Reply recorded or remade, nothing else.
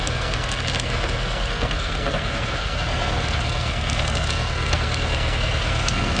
remade